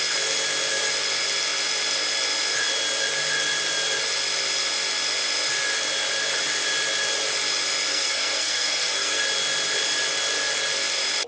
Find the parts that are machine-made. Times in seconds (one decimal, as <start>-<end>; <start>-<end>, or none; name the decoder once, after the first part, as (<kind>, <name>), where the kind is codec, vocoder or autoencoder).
7.9-9.2 (codec, SNAC)